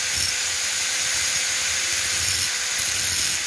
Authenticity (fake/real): real